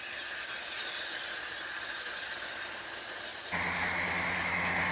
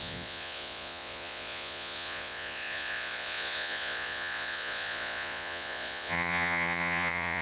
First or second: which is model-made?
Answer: second